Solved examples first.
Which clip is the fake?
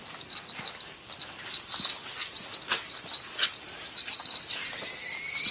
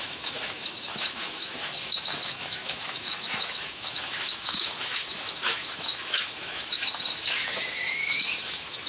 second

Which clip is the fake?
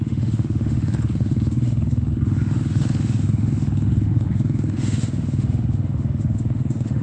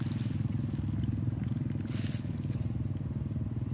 first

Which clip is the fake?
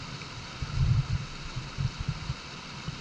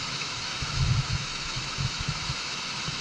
second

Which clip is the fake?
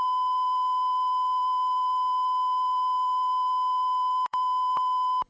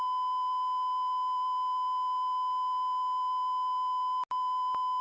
first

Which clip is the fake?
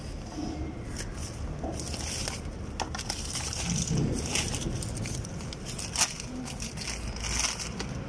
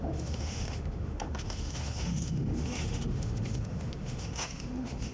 second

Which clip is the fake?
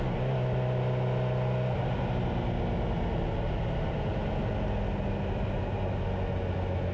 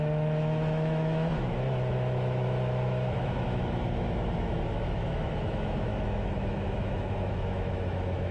second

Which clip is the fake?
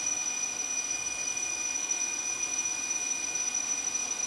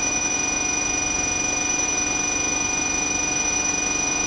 first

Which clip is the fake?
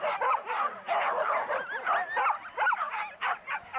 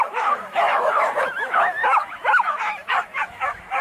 second